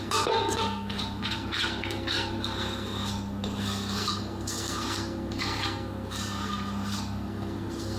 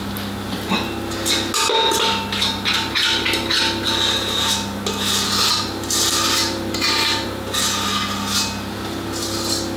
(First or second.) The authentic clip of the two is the second